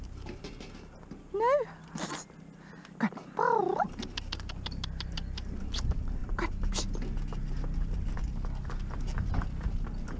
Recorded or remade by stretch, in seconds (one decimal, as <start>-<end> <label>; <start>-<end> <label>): 0.0-6.2 recorded; 6.2-6.7 remade; 6.7-10.2 recorded